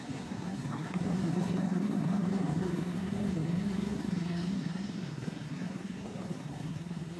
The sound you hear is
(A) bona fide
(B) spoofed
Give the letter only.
B